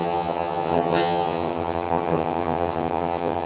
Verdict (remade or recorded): remade